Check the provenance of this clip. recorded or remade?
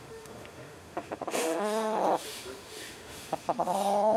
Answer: remade